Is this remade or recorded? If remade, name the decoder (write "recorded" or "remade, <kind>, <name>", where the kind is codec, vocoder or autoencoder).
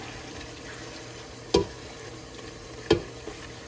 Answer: recorded